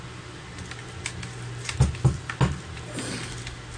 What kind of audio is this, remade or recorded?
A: recorded